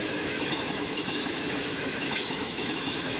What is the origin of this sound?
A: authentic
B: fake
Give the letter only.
B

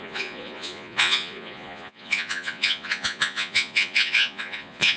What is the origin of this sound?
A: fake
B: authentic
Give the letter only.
A